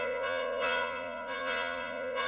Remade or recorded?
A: remade